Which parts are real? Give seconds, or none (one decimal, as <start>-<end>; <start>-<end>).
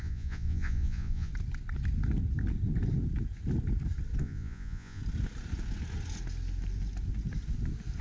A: 1.3-4.2; 5.0-8.0